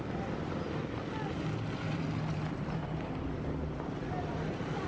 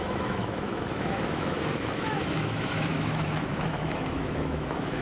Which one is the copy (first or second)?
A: second